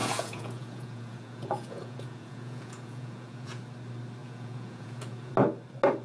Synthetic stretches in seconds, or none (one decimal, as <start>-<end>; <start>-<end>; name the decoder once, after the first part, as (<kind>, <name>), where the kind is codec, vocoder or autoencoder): 0.0-3.6 (vocoder, Vocos); 4.2-5.3